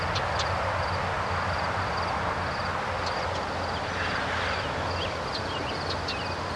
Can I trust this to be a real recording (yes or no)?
yes